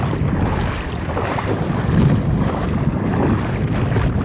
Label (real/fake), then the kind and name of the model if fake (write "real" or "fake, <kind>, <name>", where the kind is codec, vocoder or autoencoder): real